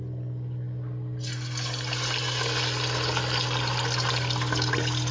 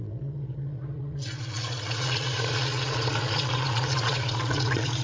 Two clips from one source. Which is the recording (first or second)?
first